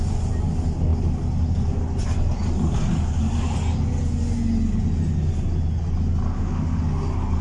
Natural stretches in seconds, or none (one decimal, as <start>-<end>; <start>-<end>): 0.0-6.3; 6.8-7.4